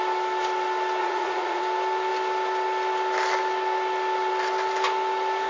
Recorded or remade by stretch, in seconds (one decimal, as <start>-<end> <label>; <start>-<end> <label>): 0.0-1.0 recorded; 1.0-1.6 remade; 1.6-5.5 recorded